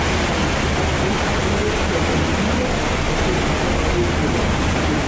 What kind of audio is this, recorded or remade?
recorded